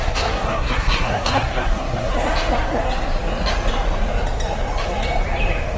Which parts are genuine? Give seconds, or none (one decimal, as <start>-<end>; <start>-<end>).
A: 2.1-5.8